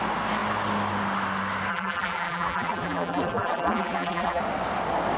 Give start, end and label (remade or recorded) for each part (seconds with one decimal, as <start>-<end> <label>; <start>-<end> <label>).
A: 0.0-1.7 recorded; 1.7-4.4 remade; 4.4-5.2 recorded